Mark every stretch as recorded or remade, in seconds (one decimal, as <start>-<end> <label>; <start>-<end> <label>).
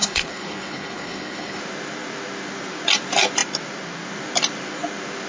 0.0-1.6 remade; 1.6-5.3 recorded